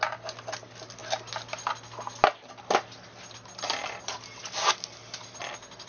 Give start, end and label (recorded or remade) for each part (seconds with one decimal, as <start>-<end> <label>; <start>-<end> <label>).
0.0-5.9 recorded